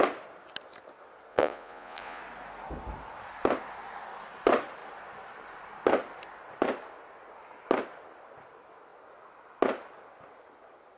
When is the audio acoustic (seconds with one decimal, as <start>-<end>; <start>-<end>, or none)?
0.0-1.3; 2.2-11.0